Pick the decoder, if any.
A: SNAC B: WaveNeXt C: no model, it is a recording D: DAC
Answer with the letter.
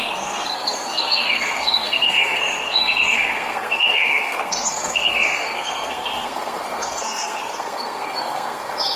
A